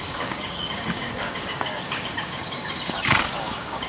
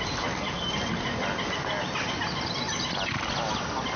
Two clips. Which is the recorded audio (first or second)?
second